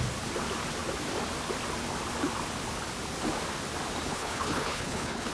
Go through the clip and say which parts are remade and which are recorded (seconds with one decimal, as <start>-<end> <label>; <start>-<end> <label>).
0.0-4.1 recorded; 4.1-5.3 remade